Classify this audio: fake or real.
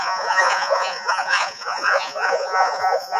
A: fake